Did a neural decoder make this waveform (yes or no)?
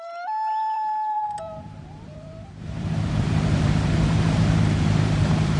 yes